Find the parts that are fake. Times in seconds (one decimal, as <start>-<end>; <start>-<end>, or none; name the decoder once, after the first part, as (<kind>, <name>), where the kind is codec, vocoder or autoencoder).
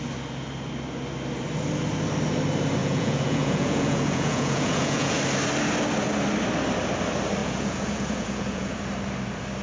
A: 2.8-5.2 (vocoder, Vocos); 7.4-8.8